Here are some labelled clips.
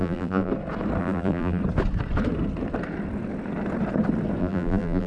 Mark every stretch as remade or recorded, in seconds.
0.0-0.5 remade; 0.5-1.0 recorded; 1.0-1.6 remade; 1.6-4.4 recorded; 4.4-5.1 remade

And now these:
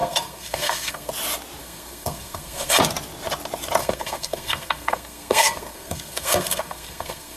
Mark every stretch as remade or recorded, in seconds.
0.0-1.1 remade; 1.1-1.6 recorded; 1.6-2.8 remade; 2.8-3.8 recorded; 3.8-7.4 remade

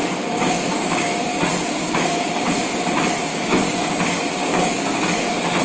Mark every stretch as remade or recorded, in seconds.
0.0-1.4 remade; 1.4-1.8 recorded; 1.8-2.5 remade; 2.5-3.3 recorded; 3.3-3.9 remade; 3.9-4.4 recorded; 4.4-5.0 remade; 5.0-5.6 recorded

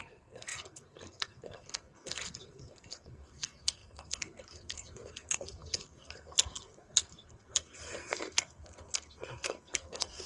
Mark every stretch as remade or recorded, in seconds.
0.0-10.3 remade

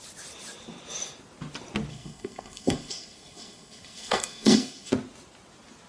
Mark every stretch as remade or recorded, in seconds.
0.0-1.9 recorded; 1.9-4.9 remade; 4.9-5.9 recorded